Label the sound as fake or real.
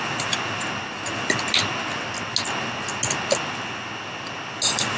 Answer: real